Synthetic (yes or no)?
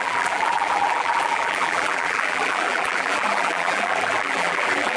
yes